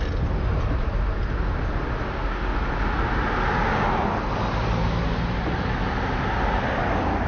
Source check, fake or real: real